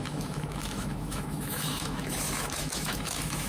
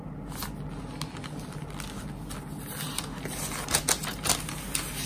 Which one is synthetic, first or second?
first